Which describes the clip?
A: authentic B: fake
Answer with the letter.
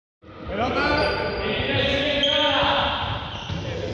A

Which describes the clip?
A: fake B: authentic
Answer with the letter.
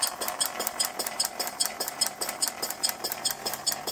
A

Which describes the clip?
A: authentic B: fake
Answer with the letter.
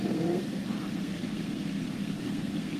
B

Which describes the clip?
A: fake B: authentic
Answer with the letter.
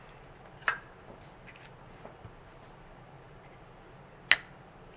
B